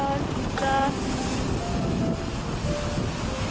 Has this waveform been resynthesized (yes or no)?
no